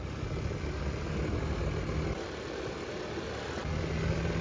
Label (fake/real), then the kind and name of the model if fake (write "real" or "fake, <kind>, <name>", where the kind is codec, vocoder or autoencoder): real